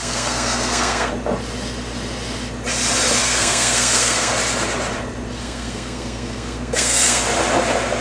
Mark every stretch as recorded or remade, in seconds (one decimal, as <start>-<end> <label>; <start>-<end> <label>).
0.0-1.1 remade; 1.1-3.2 recorded; 3.2-4.3 remade; 4.3-5.4 recorded; 5.4-7.2 remade; 7.2-8.0 recorded